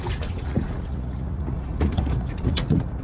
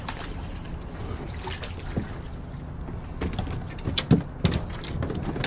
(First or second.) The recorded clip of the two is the second